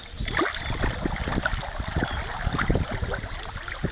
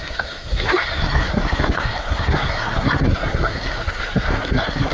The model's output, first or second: second